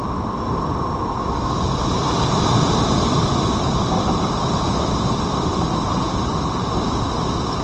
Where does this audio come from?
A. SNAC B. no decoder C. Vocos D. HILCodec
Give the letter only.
B